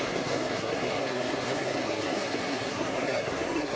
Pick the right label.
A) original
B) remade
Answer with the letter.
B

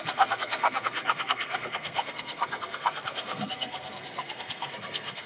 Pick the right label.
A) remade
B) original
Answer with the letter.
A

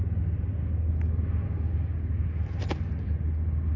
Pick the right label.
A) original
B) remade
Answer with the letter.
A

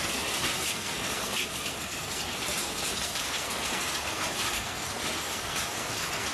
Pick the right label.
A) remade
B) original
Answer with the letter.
A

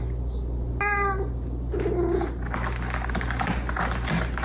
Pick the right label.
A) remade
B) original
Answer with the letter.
B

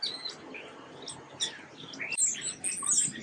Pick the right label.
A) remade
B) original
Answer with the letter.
B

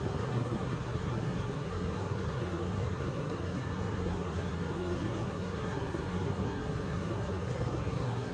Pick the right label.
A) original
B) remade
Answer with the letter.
B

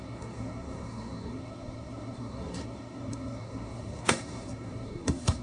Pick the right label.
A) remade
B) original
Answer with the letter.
A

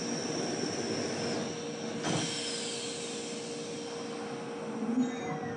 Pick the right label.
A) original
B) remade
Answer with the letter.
A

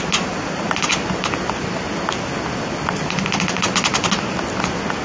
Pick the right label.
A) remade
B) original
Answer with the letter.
B